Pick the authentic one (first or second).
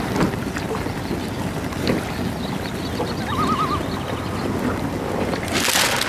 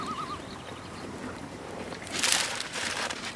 first